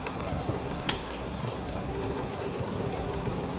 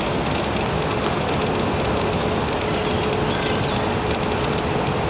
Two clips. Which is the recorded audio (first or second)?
second